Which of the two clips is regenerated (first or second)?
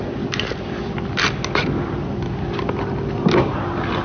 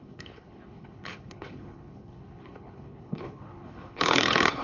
second